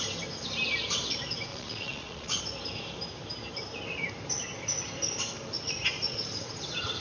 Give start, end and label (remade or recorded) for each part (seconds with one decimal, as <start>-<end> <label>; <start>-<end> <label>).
0.0-1.5 recorded; 1.5-2.4 remade; 2.4-7.0 recorded